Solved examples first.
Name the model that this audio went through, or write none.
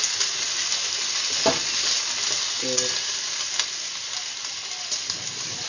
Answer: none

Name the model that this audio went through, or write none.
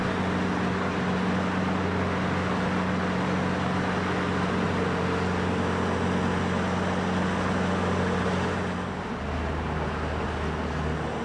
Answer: none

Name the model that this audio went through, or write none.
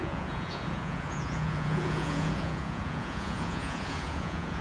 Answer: vocoder, Vocos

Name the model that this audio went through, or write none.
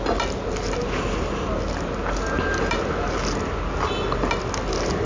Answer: none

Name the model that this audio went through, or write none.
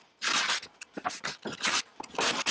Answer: none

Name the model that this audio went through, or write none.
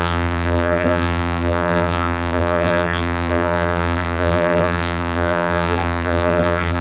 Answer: vocoder, BigVGAN v2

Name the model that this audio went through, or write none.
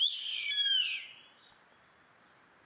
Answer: none